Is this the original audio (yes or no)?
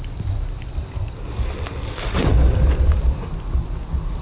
no